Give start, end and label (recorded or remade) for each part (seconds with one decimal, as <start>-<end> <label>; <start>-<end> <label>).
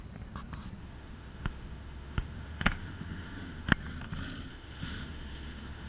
0.0-0.8 recorded; 0.8-3.7 remade; 3.7-4.5 recorded; 4.5-5.9 remade